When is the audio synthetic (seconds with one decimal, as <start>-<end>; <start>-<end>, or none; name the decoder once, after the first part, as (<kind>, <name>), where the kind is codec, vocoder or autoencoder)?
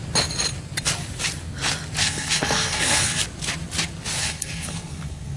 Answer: 2.0-3.2 (codec, SNAC); 4.2-5.4